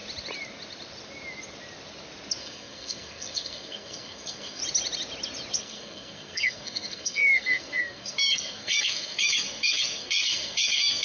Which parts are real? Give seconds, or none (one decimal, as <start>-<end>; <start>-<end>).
0.0-2.4; 4.6-5.6